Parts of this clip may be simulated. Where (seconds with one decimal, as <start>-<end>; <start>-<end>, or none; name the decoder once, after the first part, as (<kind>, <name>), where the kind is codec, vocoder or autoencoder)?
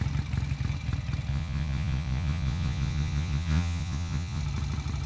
1.3-4.4 (vocoder, Vocos)